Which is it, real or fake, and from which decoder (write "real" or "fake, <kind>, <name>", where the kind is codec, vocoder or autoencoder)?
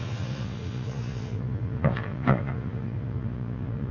fake, vocoder, Vocos